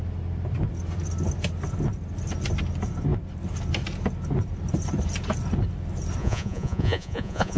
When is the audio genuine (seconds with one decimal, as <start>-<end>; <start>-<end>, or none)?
0.0-6.2